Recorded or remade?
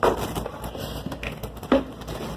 recorded